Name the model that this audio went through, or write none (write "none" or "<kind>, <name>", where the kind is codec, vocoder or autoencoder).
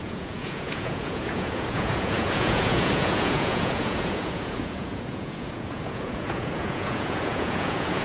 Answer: vocoder, Vocos